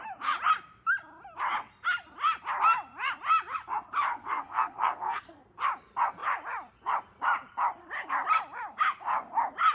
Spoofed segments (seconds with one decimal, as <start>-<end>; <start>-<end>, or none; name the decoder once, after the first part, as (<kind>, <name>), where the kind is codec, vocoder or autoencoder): 4.1-5.3 (codec, SNAC)